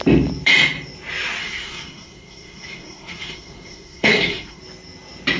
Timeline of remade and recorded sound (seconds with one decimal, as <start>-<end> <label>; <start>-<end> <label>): 0.0-1.4 recorded; 1.4-4.6 remade; 4.6-5.4 recorded